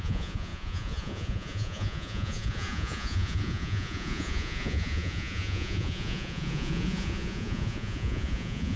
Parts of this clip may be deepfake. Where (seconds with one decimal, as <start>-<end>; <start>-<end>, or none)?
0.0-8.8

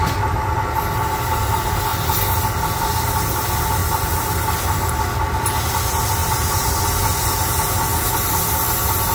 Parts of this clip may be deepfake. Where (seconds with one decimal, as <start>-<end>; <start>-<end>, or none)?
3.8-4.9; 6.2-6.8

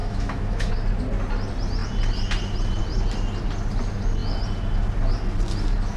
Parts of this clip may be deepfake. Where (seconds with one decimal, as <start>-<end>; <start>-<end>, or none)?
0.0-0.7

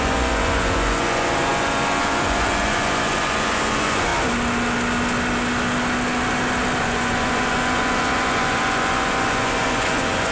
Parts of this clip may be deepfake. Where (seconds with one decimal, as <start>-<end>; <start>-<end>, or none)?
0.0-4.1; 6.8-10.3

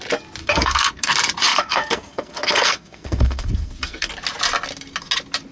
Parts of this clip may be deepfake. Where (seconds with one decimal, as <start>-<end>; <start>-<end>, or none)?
0.4-1.1; 1.5-4.1

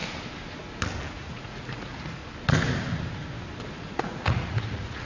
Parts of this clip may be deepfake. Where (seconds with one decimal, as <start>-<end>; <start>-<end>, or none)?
1.1-2.2; 3.8-5.1

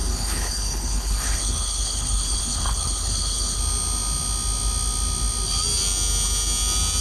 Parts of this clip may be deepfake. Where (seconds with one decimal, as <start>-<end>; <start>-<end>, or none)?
0.0-3.6

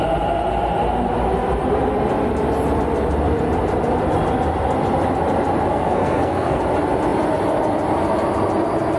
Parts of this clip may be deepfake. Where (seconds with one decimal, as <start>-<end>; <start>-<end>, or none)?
5.7-6.6